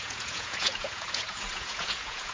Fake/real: fake